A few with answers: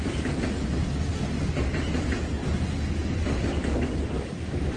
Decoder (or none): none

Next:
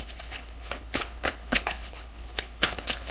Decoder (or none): codec, HILCodec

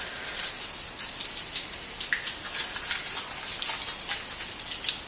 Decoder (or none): none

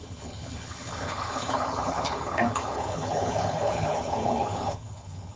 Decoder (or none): codec, HILCodec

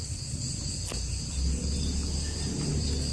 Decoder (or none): none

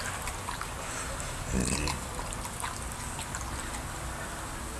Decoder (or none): none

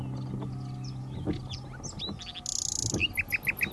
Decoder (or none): none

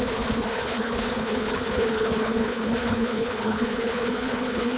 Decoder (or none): codec, HILCodec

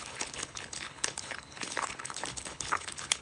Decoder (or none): codec, HILCodec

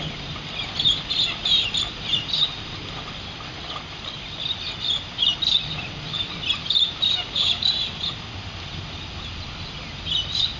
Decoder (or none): none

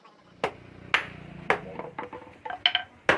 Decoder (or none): none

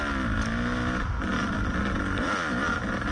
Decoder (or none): none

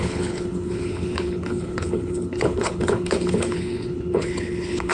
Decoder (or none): codec, HILCodec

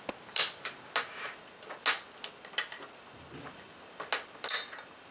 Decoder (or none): none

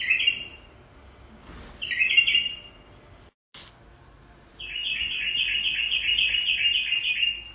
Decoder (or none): none